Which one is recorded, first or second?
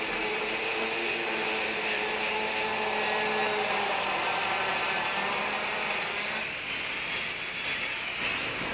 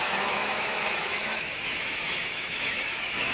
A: first